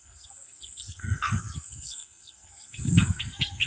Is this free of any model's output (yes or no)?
no